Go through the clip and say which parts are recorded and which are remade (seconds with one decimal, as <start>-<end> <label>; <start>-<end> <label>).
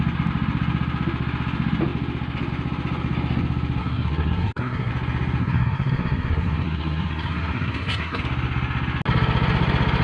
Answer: 0.0-3.8 recorded; 3.8-4.9 remade; 4.9-5.4 recorded; 5.4-8.2 remade; 8.2-10.0 recorded